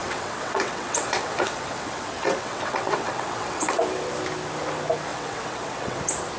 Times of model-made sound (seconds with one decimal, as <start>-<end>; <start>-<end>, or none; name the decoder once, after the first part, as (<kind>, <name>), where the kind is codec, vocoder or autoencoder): 0.0-3.8 (vocoder, WaveNeXt); 5.1-6.0